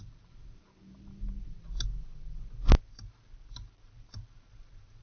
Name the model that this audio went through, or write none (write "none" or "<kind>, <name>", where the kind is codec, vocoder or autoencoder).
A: none